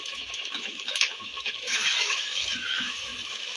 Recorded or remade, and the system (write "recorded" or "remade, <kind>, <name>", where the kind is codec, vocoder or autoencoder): remade, autoencoder, DAC-VAE